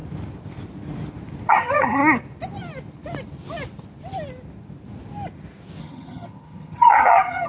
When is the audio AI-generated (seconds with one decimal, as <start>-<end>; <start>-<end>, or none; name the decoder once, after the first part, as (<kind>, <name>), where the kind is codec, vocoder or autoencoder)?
1.5-2.0 (vocoder, HiFi-GAN); 5.8-7.5

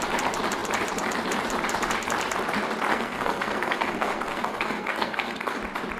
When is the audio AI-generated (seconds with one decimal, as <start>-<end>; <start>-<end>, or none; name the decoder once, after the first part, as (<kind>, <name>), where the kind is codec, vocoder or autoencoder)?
2.9-5.6 (codec, SNAC)

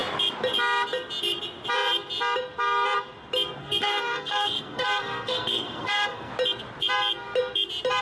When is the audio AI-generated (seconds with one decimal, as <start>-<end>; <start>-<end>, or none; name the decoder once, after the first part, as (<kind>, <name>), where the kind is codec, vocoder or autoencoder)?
3.6-6.3 (codec, SNAC)

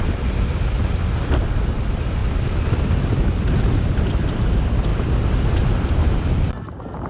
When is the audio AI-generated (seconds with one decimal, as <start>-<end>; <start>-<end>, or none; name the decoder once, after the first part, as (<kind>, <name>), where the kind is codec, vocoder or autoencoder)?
0.0-2.2 (vocoder, BigVGAN v2); 2.8-4.9; 5.5-7.1

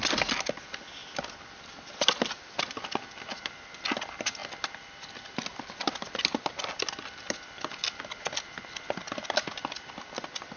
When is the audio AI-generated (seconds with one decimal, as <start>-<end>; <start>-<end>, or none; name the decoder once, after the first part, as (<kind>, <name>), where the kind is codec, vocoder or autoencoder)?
none